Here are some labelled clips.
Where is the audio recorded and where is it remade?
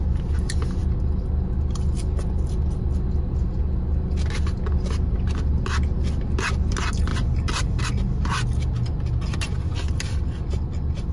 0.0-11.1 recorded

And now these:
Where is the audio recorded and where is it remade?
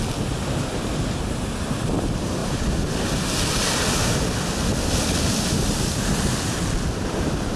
0.0-7.6 recorded